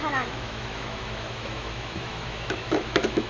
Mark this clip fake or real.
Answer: fake